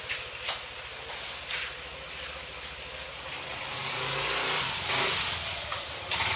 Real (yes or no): yes